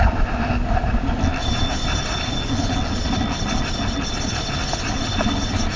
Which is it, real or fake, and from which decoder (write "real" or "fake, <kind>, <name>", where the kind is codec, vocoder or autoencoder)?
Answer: real